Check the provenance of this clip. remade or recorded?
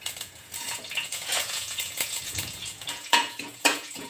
remade